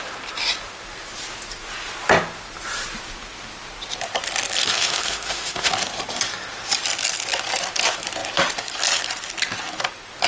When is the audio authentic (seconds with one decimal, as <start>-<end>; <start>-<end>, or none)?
0.0-4.7; 5.7-10.3